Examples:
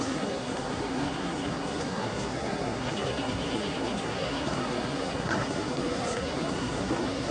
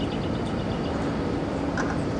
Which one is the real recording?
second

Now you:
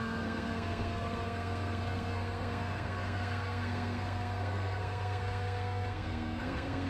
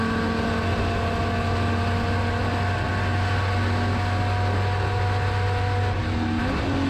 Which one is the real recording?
second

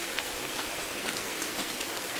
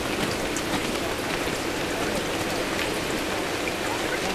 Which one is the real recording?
second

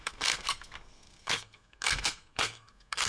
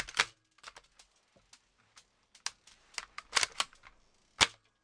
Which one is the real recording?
second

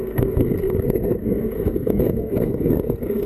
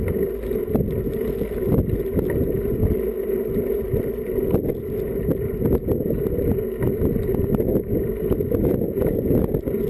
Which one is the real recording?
second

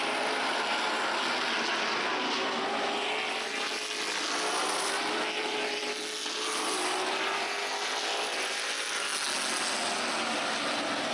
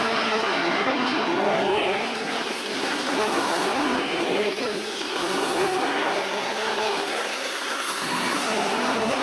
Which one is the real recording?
first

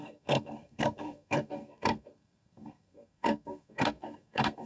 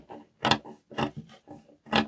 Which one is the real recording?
second